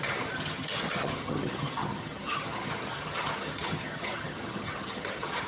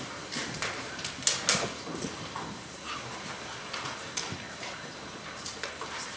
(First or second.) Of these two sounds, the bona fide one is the second